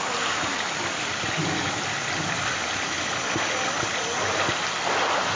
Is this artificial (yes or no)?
no